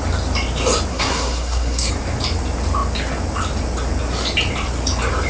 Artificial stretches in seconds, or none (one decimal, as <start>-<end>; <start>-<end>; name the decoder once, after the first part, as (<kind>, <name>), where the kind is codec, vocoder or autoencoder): 0.9-1.9 (codec, SNAC)